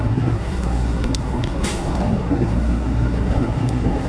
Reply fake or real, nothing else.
fake